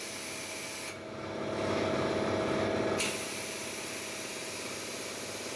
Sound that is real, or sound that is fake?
real